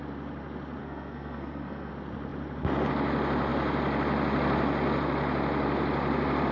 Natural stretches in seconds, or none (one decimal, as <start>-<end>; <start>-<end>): 0.0-0.8; 1.9-6.5